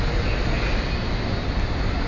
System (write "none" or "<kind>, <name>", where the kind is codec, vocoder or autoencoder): none